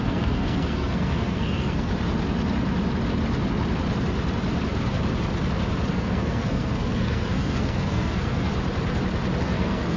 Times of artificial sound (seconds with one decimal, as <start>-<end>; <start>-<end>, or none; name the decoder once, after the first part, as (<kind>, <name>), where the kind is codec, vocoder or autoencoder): 0.0-1.9 (codec, SNAC); 5.9-8.5; 9.4-10.0